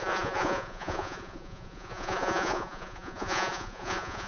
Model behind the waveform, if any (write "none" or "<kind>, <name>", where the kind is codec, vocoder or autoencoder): vocoder, Vocos